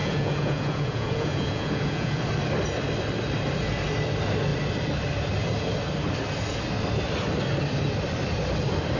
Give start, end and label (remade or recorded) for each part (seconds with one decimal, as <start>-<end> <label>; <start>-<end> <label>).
0.0-2.2 remade; 2.2-9.0 recorded